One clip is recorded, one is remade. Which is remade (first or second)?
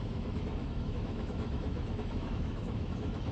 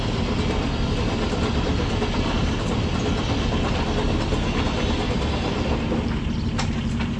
first